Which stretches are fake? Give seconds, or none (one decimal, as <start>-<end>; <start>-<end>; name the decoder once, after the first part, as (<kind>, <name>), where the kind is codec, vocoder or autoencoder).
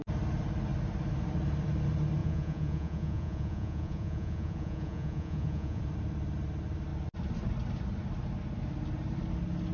2.2-5.8 (vocoder, Vocos)